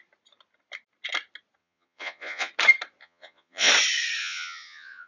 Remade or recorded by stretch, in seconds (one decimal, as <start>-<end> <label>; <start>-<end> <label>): 0.0-1.6 recorded; 1.6-2.5 remade; 2.5-3.0 recorded; 3.0-3.7 remade; 3.7-4.2 recorded; 4.2-5.1 remade